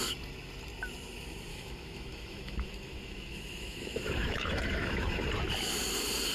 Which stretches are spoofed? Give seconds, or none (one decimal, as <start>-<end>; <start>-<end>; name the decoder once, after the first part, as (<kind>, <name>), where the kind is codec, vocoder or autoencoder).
1.5-5.3 (autoencoder, DAC-VAE)